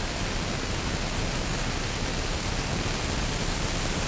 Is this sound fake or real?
real